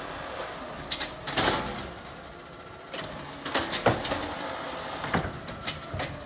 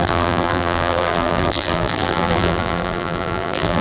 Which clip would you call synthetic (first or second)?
second